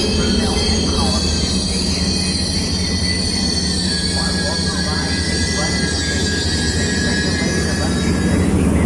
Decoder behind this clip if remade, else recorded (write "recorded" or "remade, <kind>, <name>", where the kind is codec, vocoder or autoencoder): recorded